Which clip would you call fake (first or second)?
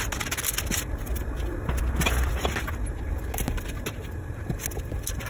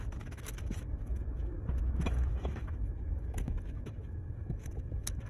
second